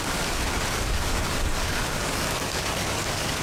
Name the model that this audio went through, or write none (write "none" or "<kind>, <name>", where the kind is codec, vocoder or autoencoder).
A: codec, DAC